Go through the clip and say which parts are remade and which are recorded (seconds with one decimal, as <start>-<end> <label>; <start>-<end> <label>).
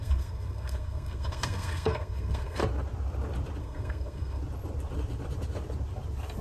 0.0-2.6 remade; 2.6-3.6 recorded; 3.6-4.4 remade; 4.4-6.4 recorded